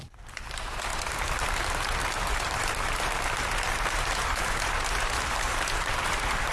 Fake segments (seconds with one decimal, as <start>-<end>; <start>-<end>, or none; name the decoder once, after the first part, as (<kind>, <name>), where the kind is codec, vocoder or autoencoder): 0.0-6.5 (vocoder, BigVGAN v2)